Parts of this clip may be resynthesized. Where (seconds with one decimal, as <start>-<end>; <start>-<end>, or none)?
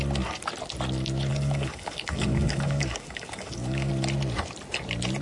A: 1.3-3.9